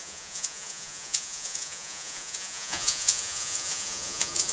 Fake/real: fake